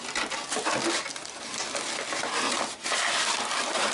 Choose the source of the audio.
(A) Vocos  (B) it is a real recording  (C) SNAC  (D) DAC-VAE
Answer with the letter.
B